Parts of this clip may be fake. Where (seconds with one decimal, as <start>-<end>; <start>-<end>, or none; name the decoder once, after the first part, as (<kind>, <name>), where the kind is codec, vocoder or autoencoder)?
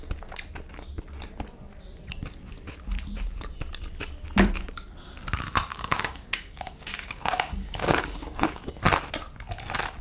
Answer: 5.7-8.7 (codec, DAC)